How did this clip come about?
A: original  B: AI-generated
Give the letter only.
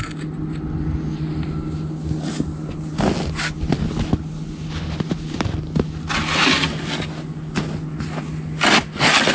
A